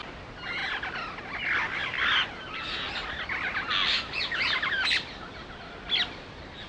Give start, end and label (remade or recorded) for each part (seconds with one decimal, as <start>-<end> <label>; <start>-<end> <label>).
0.0-6.7 recorded